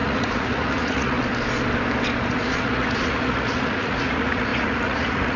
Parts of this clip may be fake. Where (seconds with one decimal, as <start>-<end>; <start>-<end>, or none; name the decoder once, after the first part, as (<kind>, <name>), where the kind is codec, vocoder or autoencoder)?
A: 0.0-1.2 (vocoder, Vocos); 2.3-5.4